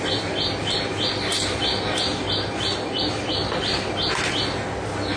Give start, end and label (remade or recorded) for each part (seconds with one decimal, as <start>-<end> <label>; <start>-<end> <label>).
0.0-5.2 recorded